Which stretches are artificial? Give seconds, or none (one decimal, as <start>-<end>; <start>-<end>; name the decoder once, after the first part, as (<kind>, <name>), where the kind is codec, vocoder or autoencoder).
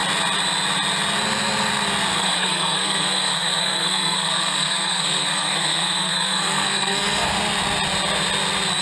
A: 2.1-7.3 (codec, SNAC)